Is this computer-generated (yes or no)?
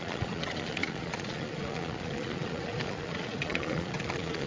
yes